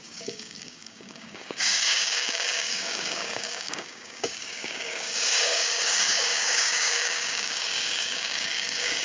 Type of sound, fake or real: fake